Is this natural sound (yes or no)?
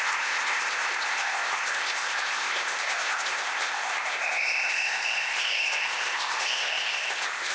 no